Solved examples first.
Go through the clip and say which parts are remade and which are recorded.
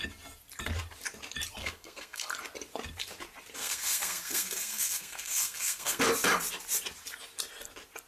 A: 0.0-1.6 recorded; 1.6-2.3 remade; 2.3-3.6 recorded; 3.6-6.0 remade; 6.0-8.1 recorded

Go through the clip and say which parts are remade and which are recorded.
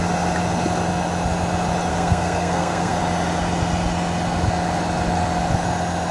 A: 0.0-1.9 recorded; 1.9-3.0 remade; 3.0-6.1 recorded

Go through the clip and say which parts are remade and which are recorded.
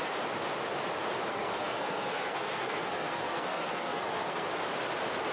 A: 0.0-1.3 recorded; 1.3-4.5 remade; 4.5-5.3 recorded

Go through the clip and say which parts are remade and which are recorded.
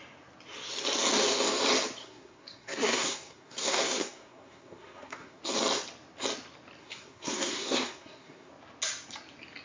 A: 0.0-2.0 recorded; 2.0-5.4 remade; 5.4-6.8 recorded; 6.8-8.5 remade; 8.5-9.6 recorded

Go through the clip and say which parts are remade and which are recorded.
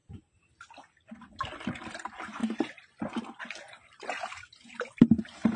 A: 0.0-5.6 recorded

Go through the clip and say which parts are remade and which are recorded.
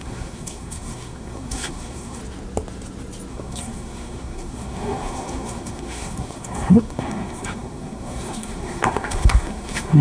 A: 0.0-2.2 remade; 2.2-3.3 recorded; 3.3-10.0 remade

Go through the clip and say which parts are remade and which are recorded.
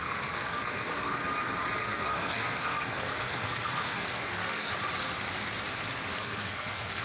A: 0.0-1.2 remade; 1.2-1.8 recorded; 1.8-4.7 remade; 4.7-6.2 recorded; 6.2-7.0 remade